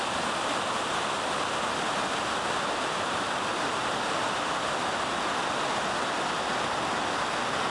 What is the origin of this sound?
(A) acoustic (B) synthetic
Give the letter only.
A